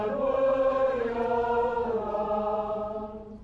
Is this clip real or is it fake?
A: fake